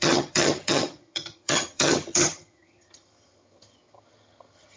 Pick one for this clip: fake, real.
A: fake